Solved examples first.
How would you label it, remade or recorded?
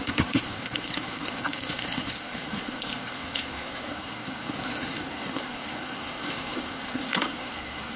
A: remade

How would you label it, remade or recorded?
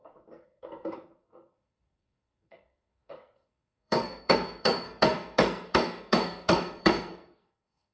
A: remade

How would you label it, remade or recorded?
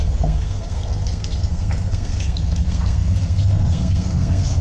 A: remade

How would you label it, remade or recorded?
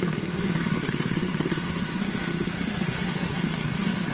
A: remade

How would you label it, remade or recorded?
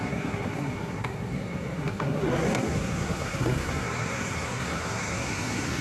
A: remade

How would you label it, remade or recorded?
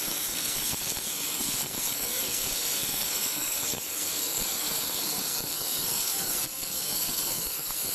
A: remade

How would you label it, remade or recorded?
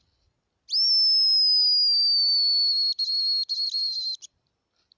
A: recorded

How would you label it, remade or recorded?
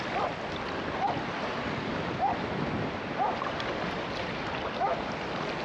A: recorded